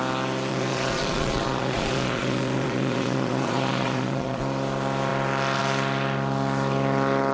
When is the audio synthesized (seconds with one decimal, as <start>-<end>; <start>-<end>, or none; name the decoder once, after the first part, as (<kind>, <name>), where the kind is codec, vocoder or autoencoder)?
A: 0.5-4.4 (vocoder, Vocos)